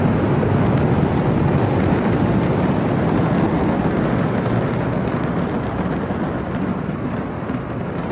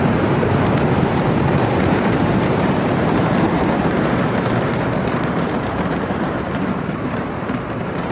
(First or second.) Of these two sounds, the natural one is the first